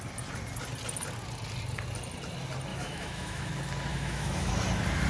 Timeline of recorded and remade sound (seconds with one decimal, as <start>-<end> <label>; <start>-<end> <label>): 0.0-2.7 recorded; 2.7-3.5 remade; 3.5-3.9 recorded; 3.9-4.5 remade; 4.5-5.1 recorded